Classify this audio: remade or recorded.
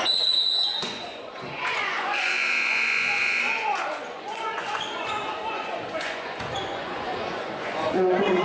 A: remade